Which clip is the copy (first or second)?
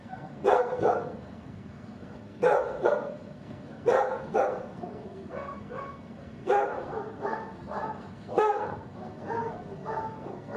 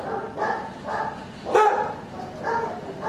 first